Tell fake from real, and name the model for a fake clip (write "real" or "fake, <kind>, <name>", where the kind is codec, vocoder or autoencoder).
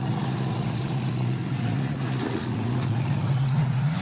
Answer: fake, vocoder, Vocos